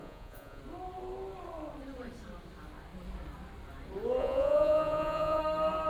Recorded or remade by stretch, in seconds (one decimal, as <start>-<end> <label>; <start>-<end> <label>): 0.0-0.6 remade; 0.6-4.2 recorded; 4.2-5.4 remade; 5.4-5.9 recorded